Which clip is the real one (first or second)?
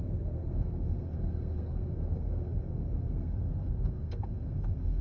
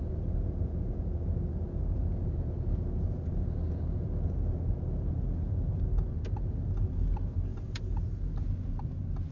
second